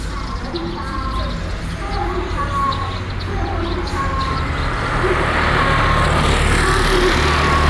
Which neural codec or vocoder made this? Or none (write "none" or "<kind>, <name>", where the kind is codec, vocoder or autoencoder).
none